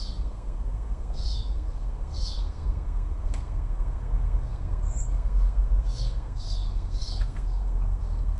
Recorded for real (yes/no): no